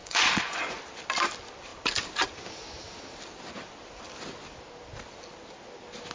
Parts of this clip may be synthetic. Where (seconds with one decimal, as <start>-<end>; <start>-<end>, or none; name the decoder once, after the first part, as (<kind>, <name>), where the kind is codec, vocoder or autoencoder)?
0.0-0.8 (vocoder, Vocos)